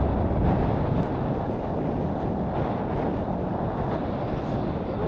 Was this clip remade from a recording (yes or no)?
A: no